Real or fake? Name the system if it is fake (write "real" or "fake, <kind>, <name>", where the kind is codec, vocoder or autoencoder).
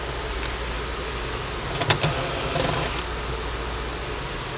real